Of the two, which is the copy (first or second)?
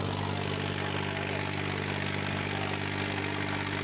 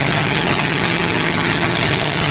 second